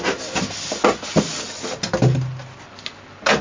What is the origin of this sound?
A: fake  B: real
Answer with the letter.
B